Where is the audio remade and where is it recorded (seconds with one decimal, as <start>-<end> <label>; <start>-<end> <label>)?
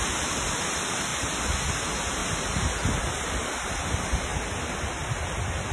0.0-1.1 remade; 1.1-1.8 recorded; 1.8-2.2 remade; 2.2-3.0 recorded; 3.0-4.3 remade; 4.3-5.7 recorded